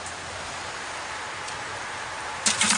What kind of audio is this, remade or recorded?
remade